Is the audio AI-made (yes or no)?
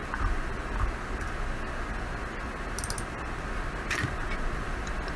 no